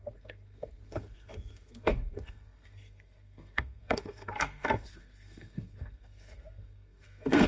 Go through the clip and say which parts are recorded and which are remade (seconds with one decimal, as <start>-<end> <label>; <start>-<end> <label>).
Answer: 0.0-7.5 remade